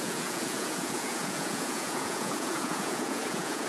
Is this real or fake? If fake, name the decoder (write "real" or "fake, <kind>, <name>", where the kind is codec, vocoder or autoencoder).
fake, vocoder, Vocos